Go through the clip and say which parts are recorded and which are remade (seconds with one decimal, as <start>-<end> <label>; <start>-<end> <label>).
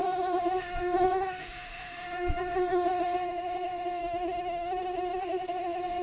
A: 0.0-4.0 remade; 4.0-5.2 recorded; 5.2-6.0 remade